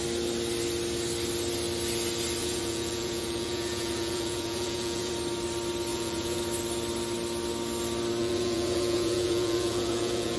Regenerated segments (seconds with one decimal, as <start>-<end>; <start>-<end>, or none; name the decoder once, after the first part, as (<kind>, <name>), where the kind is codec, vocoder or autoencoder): 2.4-5.1 (vocoder, Vocos); 5.9-6.4; 8.2-10.4

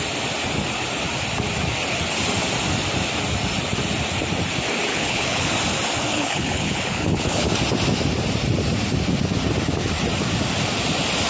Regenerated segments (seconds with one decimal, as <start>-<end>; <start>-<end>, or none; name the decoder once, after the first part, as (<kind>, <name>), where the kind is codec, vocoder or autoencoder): 4.9-5.5 (codec, HILCodec); 6.1-7.5

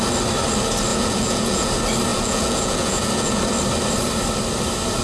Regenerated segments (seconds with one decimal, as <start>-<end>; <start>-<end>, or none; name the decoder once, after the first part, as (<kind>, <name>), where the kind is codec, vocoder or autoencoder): 0.9-1.7 (vocoder, Vocos); 2.1-3.4

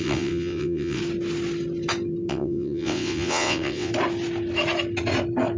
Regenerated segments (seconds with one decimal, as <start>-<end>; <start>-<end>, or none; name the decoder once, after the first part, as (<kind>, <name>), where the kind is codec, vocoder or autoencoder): 0.0-1.0 (vocoder, WaveNeXt); 2.3-3.9

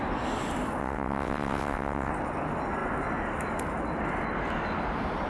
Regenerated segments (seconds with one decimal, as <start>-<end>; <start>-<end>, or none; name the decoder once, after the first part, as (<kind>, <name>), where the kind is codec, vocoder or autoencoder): 0.8-2.1 (vocoder, WaveNeXt)

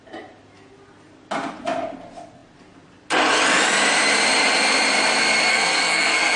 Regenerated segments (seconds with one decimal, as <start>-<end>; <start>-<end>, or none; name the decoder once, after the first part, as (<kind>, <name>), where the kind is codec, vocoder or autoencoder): 5.5-6.4 (codec, SNAC)

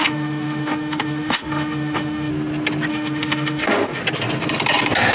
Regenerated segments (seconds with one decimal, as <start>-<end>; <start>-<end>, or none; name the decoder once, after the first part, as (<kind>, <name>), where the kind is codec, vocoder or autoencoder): 0.0-2.3 (autoencoder, DAC-VAE); 2.9-4.0

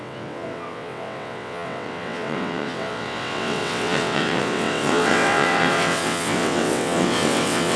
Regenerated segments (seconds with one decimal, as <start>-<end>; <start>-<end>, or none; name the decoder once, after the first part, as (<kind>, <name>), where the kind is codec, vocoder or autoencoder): 0.0-7.8 (vocoder, WaveNeXt)